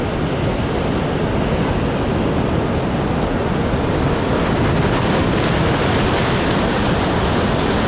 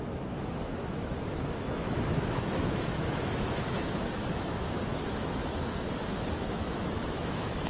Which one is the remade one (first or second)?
second